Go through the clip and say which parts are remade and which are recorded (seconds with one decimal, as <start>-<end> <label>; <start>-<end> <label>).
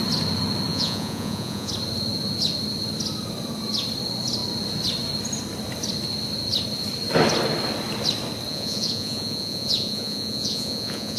0.0-0.7 recorded; 0.7-1.7 remade; 1.7-8.5 recorded; 8.5-11.2 remade